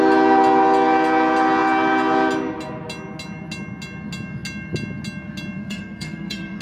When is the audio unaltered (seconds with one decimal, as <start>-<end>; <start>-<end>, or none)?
0.0-5.6